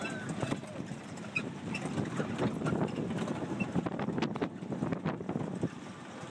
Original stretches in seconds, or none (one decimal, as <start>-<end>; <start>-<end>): 0.0-6.3